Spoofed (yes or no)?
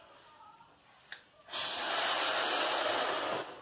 no